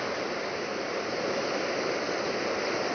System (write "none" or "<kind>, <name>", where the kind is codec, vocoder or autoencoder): none